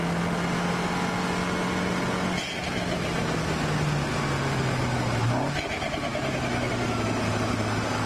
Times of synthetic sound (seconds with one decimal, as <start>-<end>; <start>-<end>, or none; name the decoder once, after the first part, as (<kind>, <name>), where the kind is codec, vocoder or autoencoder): none